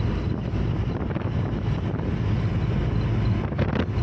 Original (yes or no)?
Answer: yes